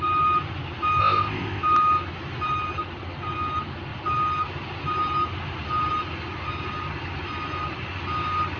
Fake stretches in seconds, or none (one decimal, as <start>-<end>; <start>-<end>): 1.0-1.6